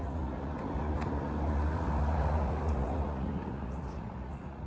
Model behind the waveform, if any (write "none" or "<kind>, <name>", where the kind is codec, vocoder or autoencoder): vocoder, Vocos